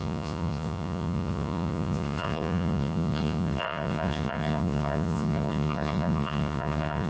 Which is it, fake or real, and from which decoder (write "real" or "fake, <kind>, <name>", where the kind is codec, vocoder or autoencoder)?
fake, vocoder, Vocos